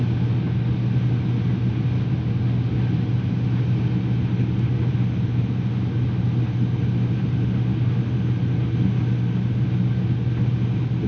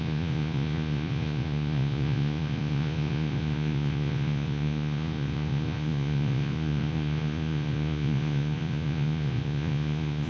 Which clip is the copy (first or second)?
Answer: second